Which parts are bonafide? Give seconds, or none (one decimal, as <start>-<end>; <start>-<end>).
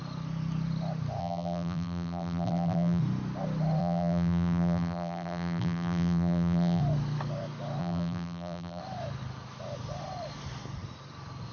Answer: 0.0-1.2; 3.0-3.8; 6.8-7.8; 8.8-11.5